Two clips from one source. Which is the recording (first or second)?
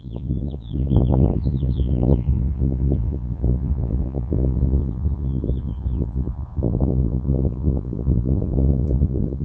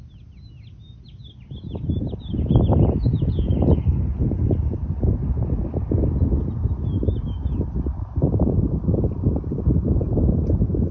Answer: second